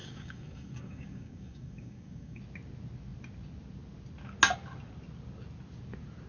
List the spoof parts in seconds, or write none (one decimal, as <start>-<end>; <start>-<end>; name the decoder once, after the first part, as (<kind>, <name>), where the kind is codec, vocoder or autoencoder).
0.0-2.4 (codec, DAC)